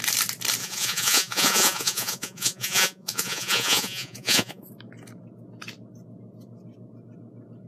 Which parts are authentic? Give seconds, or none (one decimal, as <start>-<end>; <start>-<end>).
0.0-0.6; 4.7-7.7